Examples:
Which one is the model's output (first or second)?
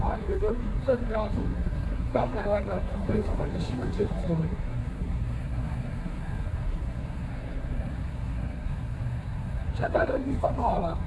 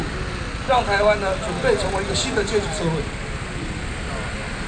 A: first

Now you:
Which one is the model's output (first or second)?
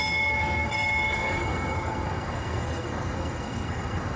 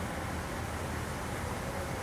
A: first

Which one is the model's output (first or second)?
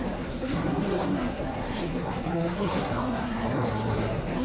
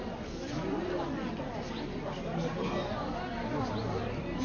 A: first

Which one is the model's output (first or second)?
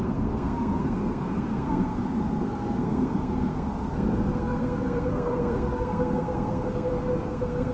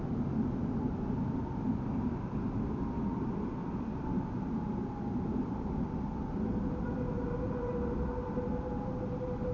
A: first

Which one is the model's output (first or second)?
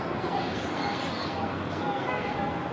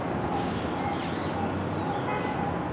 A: first